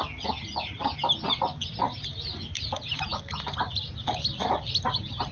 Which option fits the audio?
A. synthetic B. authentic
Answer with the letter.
B